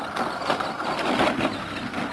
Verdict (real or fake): real